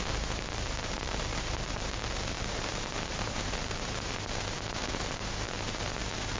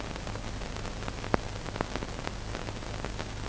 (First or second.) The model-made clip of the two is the first